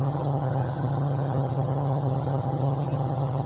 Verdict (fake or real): fake